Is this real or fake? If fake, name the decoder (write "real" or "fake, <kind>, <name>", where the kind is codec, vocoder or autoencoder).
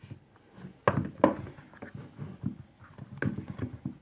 real